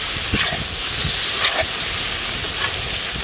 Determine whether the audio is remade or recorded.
recorded